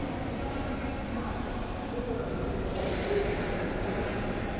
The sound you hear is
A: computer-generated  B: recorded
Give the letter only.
B